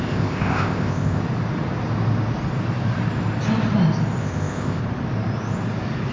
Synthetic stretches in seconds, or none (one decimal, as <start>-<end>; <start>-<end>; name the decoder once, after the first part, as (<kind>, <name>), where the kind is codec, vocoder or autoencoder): 0.0-1.2 (codec, ZipCodec); 4.2-4.8